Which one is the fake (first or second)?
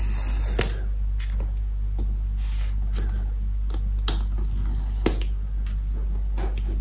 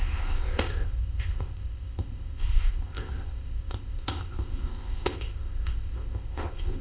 second